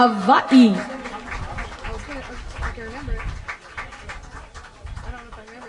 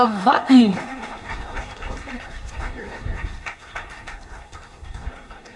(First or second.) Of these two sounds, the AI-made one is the second